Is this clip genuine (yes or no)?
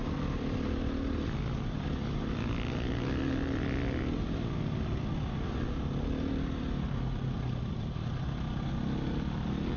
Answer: yes